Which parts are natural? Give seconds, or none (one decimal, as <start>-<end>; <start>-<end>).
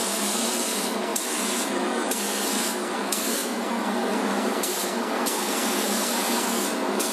none